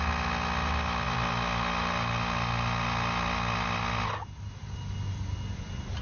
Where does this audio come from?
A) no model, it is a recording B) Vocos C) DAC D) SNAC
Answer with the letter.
A